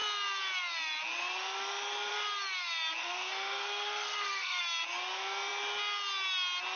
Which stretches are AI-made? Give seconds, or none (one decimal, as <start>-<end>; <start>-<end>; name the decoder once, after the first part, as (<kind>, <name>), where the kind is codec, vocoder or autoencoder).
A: 3.0-4.6 (codec, SNAC)